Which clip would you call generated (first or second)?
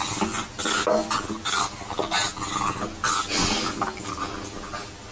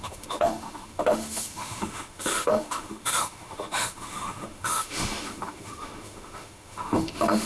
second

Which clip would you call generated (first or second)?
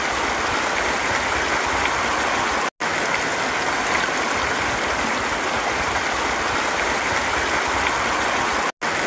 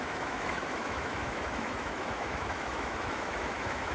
second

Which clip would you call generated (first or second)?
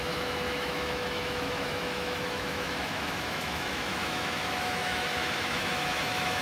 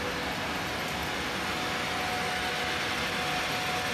first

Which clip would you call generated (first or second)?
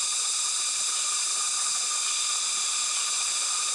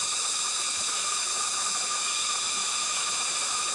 second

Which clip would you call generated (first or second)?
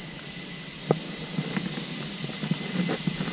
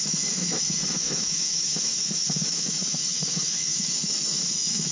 second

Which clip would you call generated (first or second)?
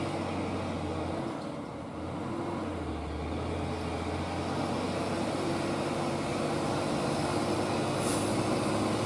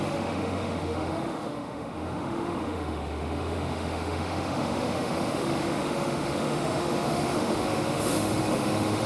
second